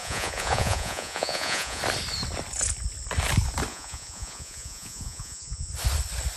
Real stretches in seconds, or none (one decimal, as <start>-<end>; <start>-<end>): 1.8-3.7; 5.7-6.4